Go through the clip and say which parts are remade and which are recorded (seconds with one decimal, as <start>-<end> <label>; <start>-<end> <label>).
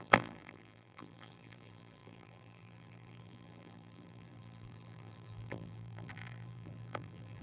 0.0-7.4 remade